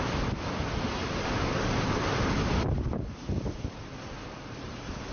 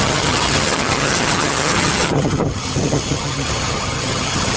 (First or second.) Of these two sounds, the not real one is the second